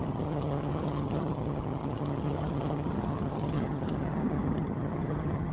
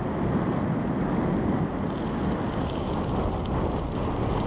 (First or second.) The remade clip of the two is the first